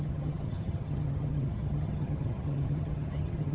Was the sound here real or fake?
fake